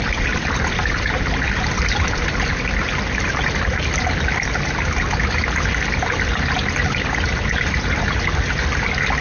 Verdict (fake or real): real